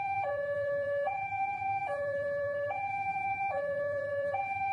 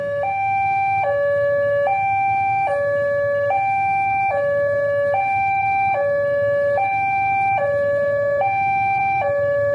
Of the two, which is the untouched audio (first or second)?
second